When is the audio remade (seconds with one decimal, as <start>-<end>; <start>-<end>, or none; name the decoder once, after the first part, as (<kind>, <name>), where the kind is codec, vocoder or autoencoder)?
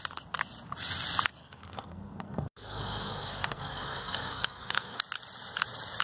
1.4-5.0 (codec, SNAC)